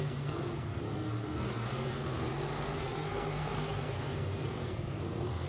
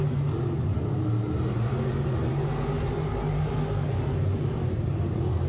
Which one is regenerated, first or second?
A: first